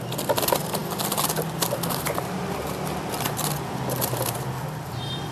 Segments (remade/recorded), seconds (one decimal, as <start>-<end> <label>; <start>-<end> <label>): 0.0-5.3 recorded